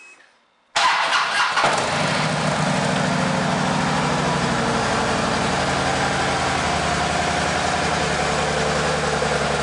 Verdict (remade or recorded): recorded